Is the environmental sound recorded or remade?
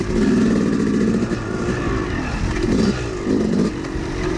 recorded